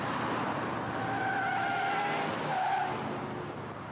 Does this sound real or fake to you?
real